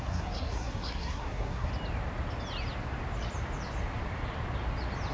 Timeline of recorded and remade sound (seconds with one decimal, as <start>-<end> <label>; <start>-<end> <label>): 0.0-1.7 remade; 1.7-5.1 recorded